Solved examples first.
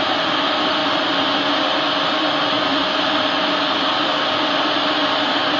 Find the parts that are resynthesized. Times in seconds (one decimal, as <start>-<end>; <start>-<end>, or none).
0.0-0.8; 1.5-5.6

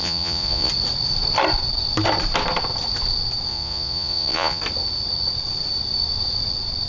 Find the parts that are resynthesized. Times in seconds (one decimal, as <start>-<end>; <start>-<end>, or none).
0.0-0.7; 3.5-4.6

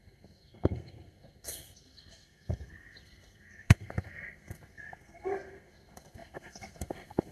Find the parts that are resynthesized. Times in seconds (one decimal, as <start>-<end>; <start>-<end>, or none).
0.0-7.3

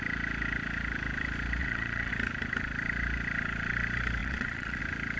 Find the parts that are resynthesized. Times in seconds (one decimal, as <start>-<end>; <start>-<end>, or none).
1.6-2.1; 4.2-4.8

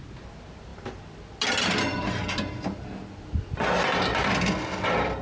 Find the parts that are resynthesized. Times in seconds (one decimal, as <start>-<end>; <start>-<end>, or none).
none

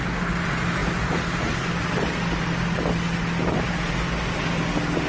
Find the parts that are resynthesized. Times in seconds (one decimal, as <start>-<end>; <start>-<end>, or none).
none